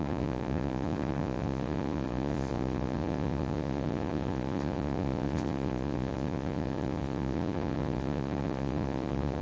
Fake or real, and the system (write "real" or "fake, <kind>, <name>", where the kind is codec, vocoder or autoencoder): fake, vocoder, Vocos